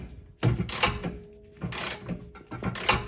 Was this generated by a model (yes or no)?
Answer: no